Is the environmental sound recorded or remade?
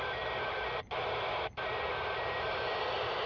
recorded